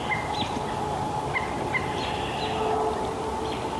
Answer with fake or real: real